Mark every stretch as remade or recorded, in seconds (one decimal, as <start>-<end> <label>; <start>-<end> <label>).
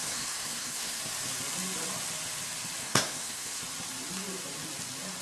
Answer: 0.0-1.0 remade; 1.0-2.8 recorded; 2.8-3.6 remade; 3.6-5.2 recorded